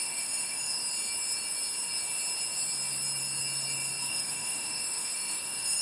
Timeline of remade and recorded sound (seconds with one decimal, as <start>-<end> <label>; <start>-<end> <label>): 0.0-0.8 remade; 0.8-4.1 recorded; 4.1-5.8 remade

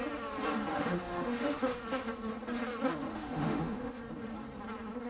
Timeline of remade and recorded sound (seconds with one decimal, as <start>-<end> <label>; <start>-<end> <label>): 0.0-0.7 recorded; 0.7-1.8 remade; 1.8-3.1 recorded; 3.1-4.0 remade; 4.0-5.1 recorded